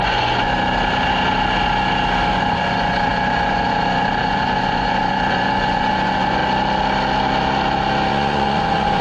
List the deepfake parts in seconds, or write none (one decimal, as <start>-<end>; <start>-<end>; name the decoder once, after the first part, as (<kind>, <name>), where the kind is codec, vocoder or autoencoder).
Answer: 0.0-0.5 (vocoder, Vocos); 2.3-6.4; 8.1-9.0